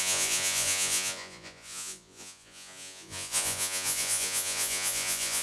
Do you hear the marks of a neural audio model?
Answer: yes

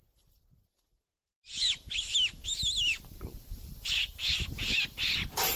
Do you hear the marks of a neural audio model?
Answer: no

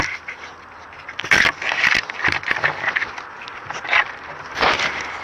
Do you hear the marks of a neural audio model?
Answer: no